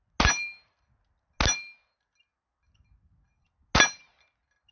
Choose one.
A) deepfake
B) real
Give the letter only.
B